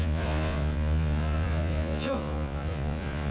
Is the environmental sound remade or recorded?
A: remade